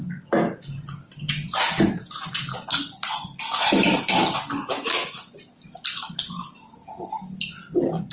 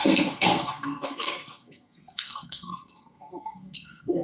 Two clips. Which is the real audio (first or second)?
first